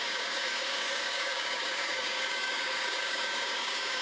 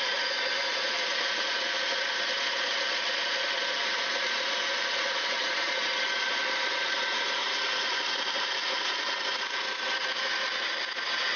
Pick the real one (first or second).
second